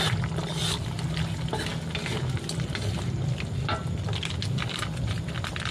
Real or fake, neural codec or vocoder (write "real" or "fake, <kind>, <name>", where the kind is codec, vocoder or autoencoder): real